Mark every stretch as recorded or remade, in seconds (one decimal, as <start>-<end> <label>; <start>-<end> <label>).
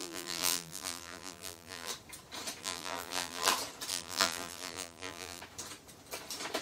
0.0-1.9 remade; 1.9-2.6 recorded; 2.6-3.5 remade; 3.5-3.9 recorded; 3.9-5.4 remade; 5.4-6.6 recorded